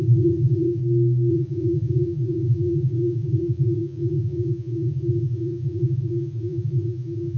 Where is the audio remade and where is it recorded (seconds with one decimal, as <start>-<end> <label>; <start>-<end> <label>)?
0.0-0.8 remade; 0.8-1.3 recorded; 1.3-7.4 remade